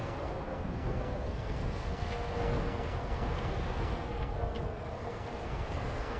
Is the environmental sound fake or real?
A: fake